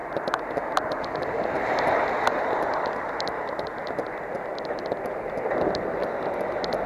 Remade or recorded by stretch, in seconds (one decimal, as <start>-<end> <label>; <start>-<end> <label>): 0.0-6.9 recorded